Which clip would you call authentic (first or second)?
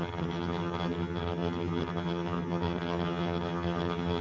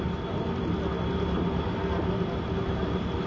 second